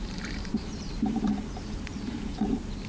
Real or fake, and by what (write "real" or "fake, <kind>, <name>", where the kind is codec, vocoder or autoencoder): fake, vocoder, BigVGAN v2